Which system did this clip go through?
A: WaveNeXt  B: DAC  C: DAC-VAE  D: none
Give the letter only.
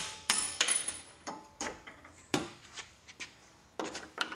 B